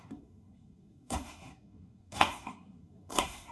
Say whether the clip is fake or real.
fake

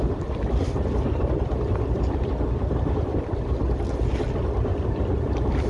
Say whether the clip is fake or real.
real